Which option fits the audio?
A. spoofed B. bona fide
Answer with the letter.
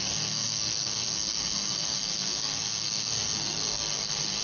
A